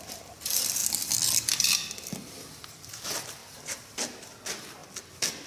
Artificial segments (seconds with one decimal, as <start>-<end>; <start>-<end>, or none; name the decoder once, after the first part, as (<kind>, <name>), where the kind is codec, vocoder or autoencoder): 3.4-4.2 (vocoder, BigVGAN v2)